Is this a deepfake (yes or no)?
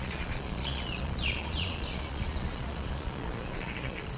yes